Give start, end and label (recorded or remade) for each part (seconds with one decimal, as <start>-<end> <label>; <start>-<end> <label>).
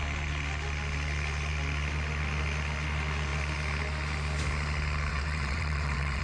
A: 0.0-5.1 recorded; 5.1-6.2 remade